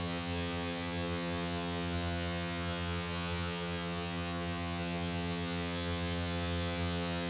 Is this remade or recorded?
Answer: remade